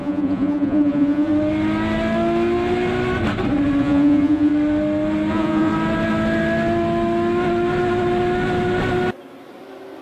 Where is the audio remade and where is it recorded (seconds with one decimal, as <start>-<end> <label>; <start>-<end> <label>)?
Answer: 0.0-1.3 remade; 1.3-3.8 recorded; 3.8-4.5 remade; 4.5-5.3 recorded; 5.3-5.7 remade; 5.7-10.0 recorded